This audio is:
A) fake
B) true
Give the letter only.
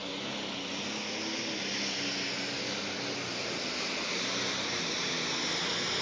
B